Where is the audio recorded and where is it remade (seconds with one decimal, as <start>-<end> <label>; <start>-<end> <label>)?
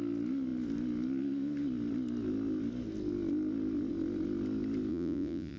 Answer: 0.0-4.9 recorded; 4.9-5.6 remade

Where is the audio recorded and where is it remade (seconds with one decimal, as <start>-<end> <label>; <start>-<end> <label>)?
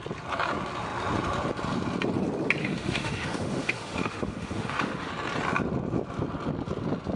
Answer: 0.0-2.6 recorded; 2.6-5.1 remade; 5.1-7.2 recorded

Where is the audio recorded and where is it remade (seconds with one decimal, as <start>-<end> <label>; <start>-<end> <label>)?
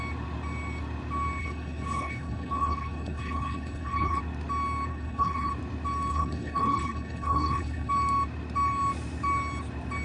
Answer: 0.0-1.4 recorded; 1.4-4.2 remade; 4.2-4.9 recorded; 4.9-5.5 remade; 5.5-6.1 recorded; 6.1-7.9 remade; 7.9-10.0 recorded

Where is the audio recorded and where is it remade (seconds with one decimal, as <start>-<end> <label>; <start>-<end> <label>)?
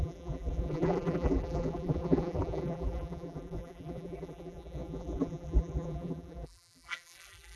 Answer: 0.0-7.6 remade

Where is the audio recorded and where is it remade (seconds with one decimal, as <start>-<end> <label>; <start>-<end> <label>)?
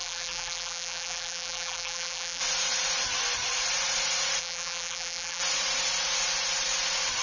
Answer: 0.0-2.4 remade; 2.4-4.4 recorded; 4.4-5.4 remade; 5.4-7.2 recorded